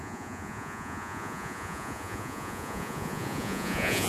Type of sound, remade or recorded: remade